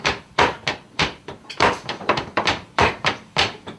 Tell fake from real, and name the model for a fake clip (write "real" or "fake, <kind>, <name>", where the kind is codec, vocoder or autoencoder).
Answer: fake, vocoder, BigVGAN v2